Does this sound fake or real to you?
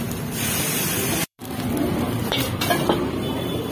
fake